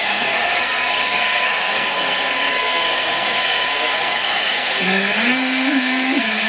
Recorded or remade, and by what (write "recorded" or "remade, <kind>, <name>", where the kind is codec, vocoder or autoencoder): remade, codec, SNAC